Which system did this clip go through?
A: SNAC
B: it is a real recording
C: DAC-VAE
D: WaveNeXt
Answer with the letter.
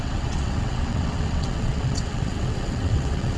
D